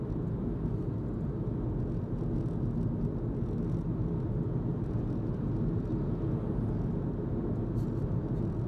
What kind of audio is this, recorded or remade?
recorded